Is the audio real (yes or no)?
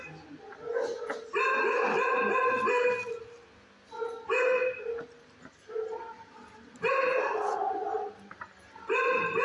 yes